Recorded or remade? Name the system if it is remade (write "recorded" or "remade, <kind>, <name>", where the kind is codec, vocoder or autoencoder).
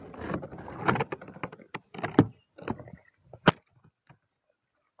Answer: recorded